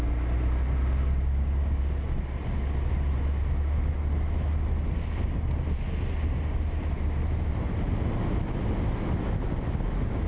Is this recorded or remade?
recorded